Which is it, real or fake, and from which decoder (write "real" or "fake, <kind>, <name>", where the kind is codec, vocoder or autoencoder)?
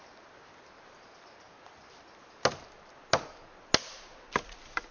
real